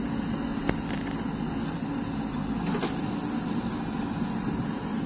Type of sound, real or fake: real